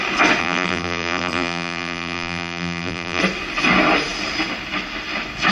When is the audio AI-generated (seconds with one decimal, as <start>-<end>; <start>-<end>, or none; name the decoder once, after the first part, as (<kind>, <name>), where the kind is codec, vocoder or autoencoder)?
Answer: 0.4-3.2 (vocoder, BigVGAN v2)